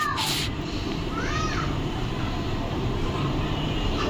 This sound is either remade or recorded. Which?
remade